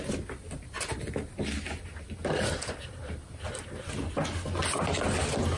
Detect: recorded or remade recorded